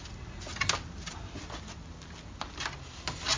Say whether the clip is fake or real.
real